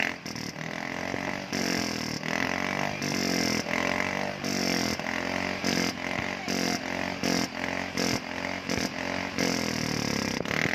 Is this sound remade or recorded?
recorded